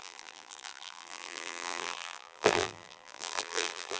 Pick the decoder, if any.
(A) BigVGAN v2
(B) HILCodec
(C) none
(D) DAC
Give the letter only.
A